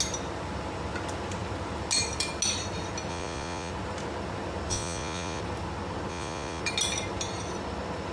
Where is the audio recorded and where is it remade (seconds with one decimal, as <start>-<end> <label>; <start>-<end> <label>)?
0.0-3.1 recorded; 3.1-3.7 remade; 3.7-4.7 recorded; 4.7-5.4 remade; 5.4-6.1 recorded; 6.1-6.6 remade; 6.6-8.1 recorded